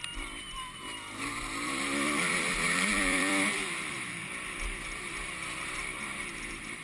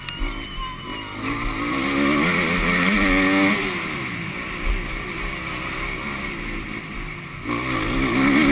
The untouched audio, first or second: second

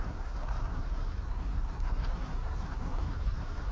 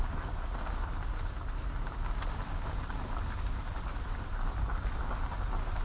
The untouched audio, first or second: second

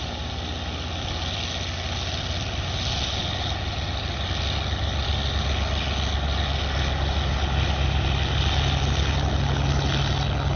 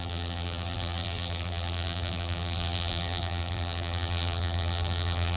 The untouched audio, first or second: first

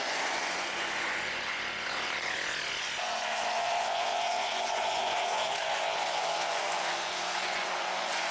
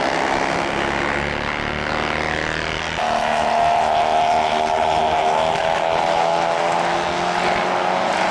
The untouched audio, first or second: second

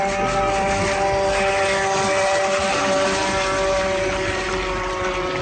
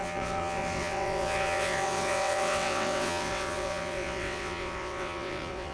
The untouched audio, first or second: first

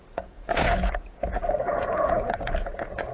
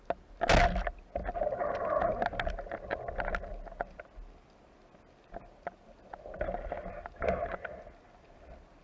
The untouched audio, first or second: second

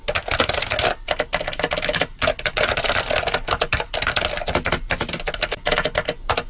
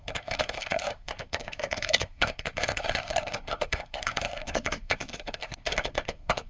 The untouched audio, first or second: first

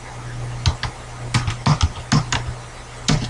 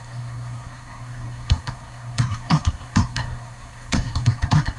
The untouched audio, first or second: first